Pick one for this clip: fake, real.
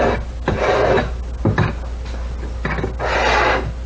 real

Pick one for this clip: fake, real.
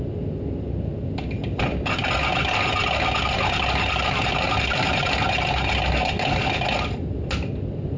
real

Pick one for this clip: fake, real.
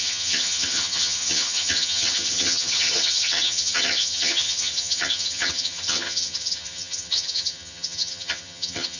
fake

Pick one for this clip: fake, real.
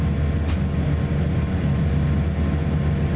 real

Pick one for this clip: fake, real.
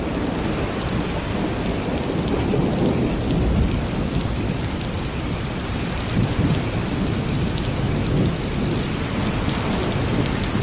real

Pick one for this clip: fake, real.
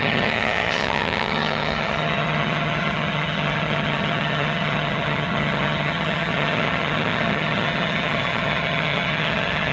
fake